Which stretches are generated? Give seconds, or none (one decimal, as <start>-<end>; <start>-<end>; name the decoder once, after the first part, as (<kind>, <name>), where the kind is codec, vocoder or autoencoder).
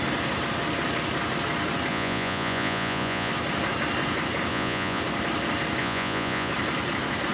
1.9-3.3 (vocoder, Vocos); 4.5-5.0; 5.8-6.5